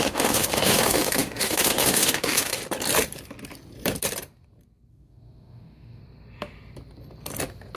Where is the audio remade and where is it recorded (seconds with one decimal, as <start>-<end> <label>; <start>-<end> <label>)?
0.0-2.6 remade; 2.6-4.9 recorded; 4.9-6.0 remade; 6.0-7.8 recorded